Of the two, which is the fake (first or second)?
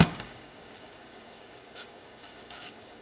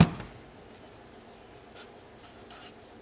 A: first